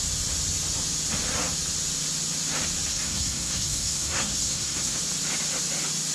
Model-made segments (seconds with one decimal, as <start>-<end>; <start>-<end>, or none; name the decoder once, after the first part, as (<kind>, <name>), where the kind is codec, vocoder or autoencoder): 2.9-5.0 (codec, SNAC)